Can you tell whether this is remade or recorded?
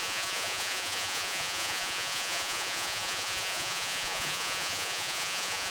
remade